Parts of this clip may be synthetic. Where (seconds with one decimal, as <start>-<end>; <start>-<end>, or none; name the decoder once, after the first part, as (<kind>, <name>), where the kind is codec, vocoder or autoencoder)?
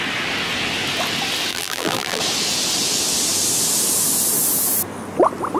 1.5-2.2 (vocoder, BigVGAN v2)